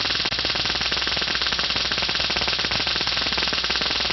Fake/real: real